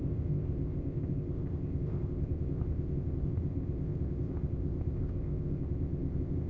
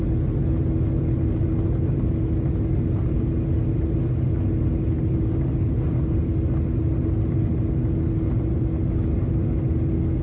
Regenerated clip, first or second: first